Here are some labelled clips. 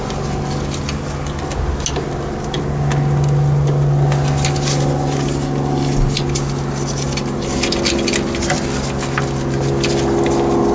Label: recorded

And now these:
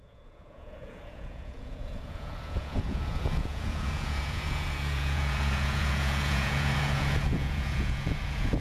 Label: remade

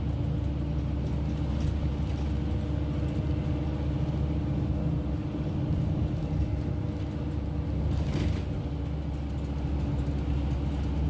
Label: recorded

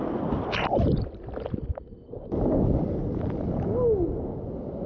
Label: recorded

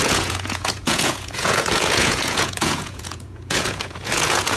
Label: remade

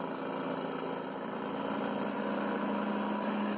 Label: recorded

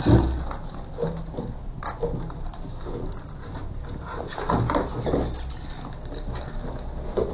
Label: recorded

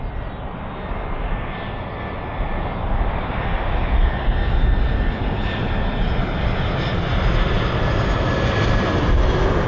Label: recorded